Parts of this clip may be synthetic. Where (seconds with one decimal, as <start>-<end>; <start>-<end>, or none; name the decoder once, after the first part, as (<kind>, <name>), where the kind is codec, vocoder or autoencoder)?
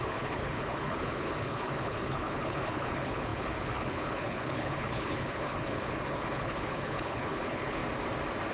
0.0-7.8 (codec, HILCodec)